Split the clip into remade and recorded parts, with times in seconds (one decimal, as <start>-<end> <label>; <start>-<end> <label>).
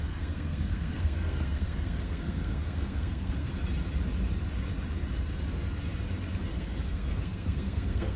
0.0-3.5 remade; 3.5-6.4 recorded; 6.4-8.2 remade